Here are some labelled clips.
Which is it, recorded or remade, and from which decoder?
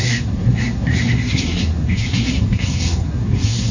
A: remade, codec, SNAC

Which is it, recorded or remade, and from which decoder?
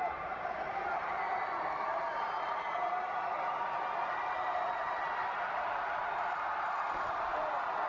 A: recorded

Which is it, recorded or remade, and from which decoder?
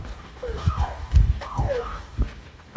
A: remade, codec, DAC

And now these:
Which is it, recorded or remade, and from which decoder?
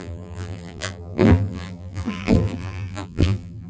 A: remade, vocoder, BigVGAN v2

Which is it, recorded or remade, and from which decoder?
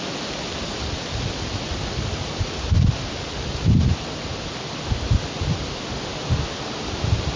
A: recorded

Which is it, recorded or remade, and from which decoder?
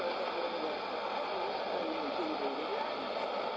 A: recorded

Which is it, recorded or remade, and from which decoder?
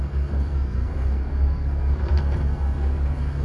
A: remade, codec, SNAC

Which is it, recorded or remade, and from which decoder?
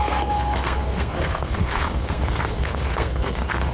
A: remade, codec, SNAC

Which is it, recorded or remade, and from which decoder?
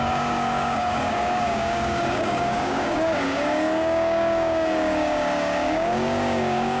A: remade, codec, DAC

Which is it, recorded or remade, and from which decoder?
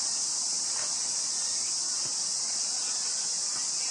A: recorded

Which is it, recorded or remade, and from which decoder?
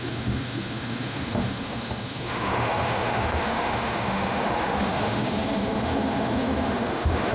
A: remade, autoencoder, DAC-VAE